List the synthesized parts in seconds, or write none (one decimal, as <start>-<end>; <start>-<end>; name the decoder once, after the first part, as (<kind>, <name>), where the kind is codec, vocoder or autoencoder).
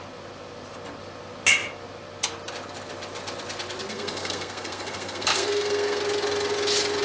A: 3.9-6.0 (codec, SNAC)